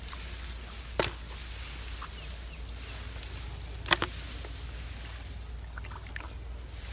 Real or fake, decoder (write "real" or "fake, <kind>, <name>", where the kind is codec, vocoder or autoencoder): real